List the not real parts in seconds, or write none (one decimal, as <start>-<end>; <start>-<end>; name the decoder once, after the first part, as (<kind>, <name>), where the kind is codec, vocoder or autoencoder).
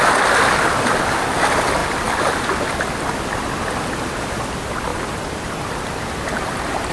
1.8-4.5 (vocoder, BigVGAN v2); 4.9-6.9